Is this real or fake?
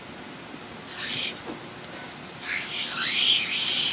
real